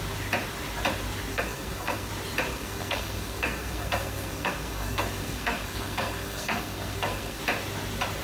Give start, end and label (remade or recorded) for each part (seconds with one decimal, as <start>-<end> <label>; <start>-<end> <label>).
0.0-1.3 recorded; 1.3-2.1 remade; 2.1-2.5 recorded; 2.5-7.4 remade; 7.4-8.2 recorded